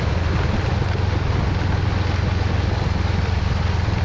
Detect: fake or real real